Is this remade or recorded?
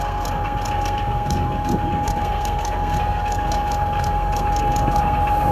remade